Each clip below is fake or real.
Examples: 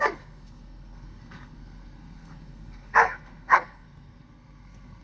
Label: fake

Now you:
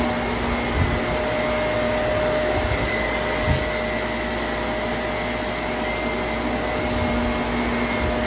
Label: real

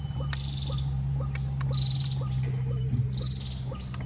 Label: real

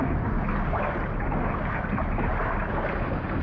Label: real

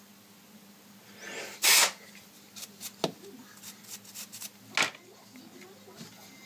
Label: real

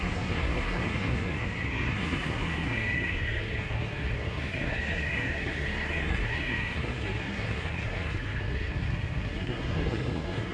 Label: fake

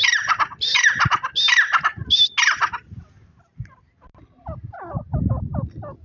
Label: real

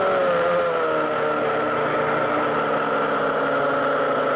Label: real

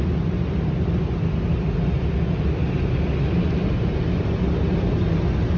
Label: real